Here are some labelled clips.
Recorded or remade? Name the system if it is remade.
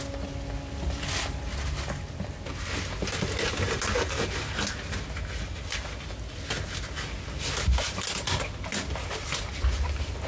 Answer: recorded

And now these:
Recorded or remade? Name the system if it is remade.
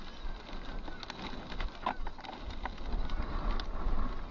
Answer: recorded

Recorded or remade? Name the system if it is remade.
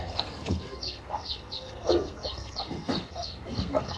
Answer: remade, codec, SNAC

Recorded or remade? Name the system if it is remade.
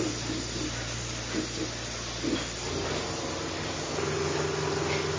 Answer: recorded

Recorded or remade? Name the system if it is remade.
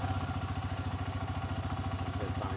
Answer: recorded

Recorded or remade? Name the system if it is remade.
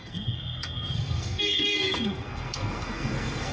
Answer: remade, codec, SNAC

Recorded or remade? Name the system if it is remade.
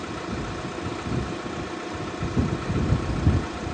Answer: recorded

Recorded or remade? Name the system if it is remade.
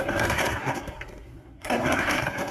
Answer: remade, codec, SNAC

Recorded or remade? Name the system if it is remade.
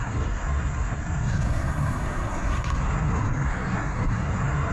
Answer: remade, codec, SNAC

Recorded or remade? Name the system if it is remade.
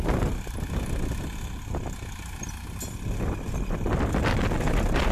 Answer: recorded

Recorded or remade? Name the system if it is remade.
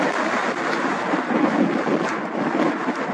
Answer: recorded